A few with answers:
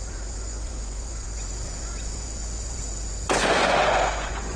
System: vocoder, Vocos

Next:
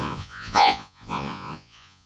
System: vocoder, Vocos